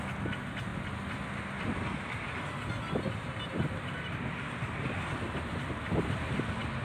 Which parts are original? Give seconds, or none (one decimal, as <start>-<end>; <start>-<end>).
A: 0.0-6.8